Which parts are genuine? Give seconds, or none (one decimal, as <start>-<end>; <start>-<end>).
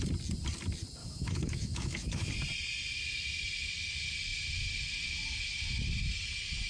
0.0-1.0; 2.3-6.7